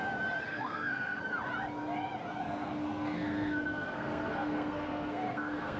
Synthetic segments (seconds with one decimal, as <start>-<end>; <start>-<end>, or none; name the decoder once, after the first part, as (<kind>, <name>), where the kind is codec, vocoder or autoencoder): 0.5-1.2 (codec, SNAC); 2.3-5.8